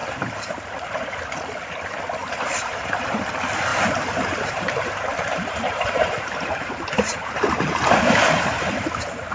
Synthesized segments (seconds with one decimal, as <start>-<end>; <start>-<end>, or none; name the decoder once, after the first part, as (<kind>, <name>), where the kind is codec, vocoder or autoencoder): 0.0-0.7 (vocoder, BigVGAN v2); 2.2-3.2; 3.7-8.6